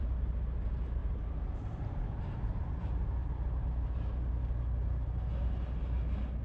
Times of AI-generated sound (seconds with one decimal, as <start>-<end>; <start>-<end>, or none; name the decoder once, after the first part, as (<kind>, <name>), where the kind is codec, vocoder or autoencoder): 1.0-2.7 (vocoder, BigVGAN v2)

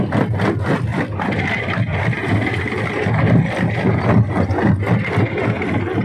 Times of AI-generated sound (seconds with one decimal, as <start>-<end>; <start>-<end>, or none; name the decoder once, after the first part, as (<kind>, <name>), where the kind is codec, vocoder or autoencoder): none

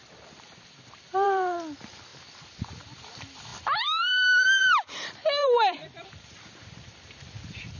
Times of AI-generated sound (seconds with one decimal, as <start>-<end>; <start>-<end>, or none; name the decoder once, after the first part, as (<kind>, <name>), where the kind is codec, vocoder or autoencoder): 0.0-7.8 (vocoder, BigVGAN v2)

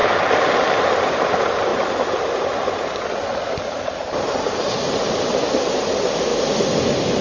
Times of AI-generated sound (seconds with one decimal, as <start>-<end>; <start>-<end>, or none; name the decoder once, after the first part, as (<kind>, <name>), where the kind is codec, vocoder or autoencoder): 0.0-1.1 (vocoder, BigVGAN v2); 3.3-3.9